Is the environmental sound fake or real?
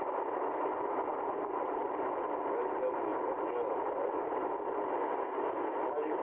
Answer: real